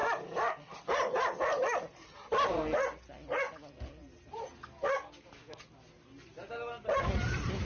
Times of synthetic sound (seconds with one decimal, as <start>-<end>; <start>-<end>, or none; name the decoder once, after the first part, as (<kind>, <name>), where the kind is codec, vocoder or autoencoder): none